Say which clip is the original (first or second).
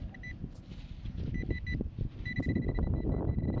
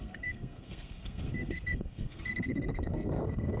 first